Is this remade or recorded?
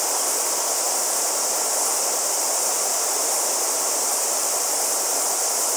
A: remade